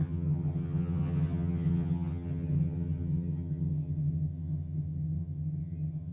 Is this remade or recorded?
remade